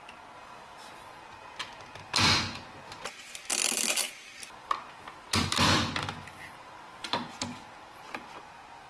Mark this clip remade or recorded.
recorded